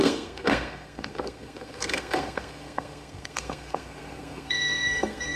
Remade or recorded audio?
remade